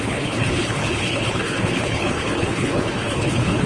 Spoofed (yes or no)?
yes